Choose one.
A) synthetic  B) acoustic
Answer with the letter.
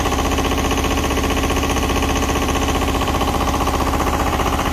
A